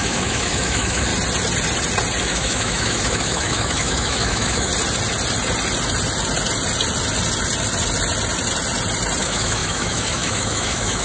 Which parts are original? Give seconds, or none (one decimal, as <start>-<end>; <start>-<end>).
1.1-2.2; 4.7-9.2